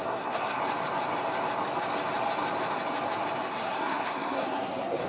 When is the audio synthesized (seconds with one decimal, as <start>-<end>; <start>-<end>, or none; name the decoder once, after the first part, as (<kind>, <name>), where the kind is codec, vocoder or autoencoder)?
0.0-0.6 (codec, SNAC); 3.5-5.1